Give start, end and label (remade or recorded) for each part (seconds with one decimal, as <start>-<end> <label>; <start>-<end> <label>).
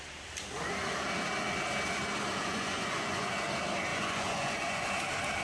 0.0-2.4 recorded; 2.4-3.3 remade; 3.3-3.9 recorded; 3.9-4.9 remade; 4.9-5.4 recorded